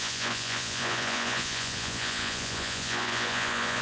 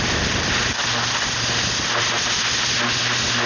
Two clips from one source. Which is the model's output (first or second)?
first